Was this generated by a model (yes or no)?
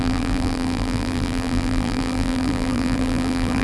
yes